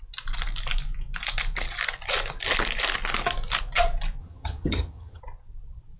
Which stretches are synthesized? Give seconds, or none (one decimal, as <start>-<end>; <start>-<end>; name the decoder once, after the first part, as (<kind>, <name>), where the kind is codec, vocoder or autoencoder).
4.2-5.2 (vocoder, HiFi-GAN)